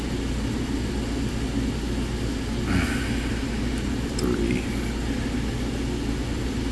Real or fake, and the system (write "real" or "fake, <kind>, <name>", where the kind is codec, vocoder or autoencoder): real